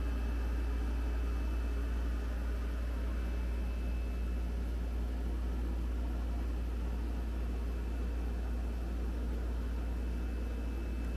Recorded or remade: recorded